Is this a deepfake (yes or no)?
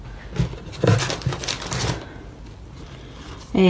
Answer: no